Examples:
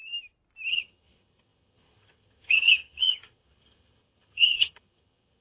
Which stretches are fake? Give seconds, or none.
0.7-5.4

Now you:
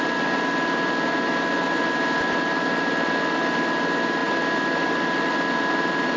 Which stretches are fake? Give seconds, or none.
none

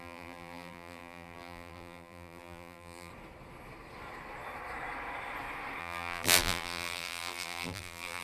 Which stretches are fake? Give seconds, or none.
0.0-3.1; 5.8-8.2